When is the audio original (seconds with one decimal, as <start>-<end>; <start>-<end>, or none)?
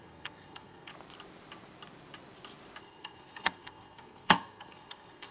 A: 0.9-2.8